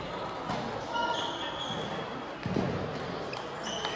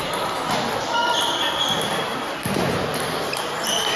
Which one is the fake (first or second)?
second